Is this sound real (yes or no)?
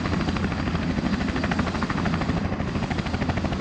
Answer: yes